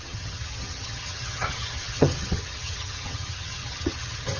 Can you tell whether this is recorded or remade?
remade